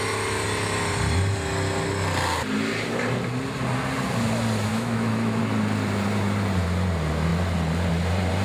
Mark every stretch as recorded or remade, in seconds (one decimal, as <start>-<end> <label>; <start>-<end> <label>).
0.0-4.7 recorded; 4.7-5.4 remade; 5.4-8.4 recorded